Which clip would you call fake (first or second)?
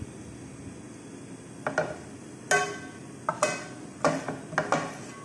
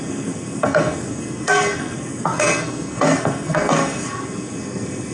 second